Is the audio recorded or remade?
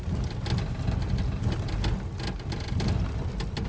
recorded